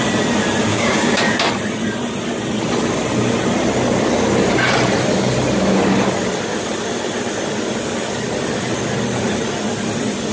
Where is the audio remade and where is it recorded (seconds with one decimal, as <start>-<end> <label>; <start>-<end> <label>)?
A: 0.0-0.7 recorded; 0.7-1.2 remade; 1.2-10.3 recorded